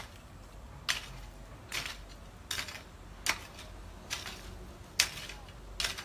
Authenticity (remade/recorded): recorded